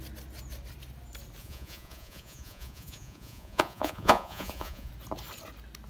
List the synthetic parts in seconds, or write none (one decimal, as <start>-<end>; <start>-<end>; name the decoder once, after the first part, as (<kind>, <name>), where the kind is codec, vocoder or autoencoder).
1.4-4.9 (vocoder, Vocos)